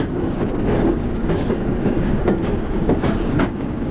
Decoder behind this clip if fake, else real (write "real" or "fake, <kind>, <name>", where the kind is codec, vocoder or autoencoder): fake, codec, DAC